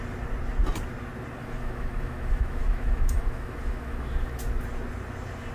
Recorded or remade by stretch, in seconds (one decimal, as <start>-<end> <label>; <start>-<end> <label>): 0.0-1.4 recorded; 1.4-4.4 remade; 4.4-5.5 recorded